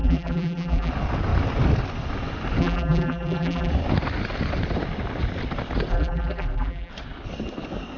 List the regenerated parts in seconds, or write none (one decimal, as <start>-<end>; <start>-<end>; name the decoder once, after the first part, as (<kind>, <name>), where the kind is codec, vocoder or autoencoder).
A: 0.0-0.9 (vocoder, BigVGAN v2); 2.6-3.7; 5.9-6.9